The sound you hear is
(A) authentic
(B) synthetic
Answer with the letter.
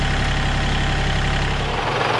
A